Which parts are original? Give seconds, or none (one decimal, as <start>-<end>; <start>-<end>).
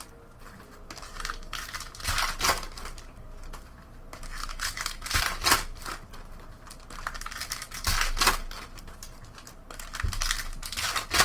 0.0-4.4; 5.2-11.2